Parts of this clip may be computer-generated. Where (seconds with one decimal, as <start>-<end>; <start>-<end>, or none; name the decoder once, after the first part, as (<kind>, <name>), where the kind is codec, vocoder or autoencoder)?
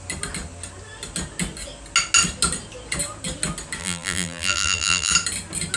3.8-5.1 (vocoder, BigVGAN v2)